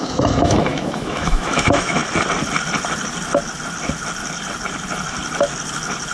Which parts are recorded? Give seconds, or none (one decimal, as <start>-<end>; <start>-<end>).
2.0-6.1